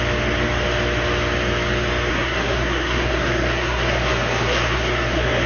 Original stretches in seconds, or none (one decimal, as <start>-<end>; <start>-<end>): 0.0-2.1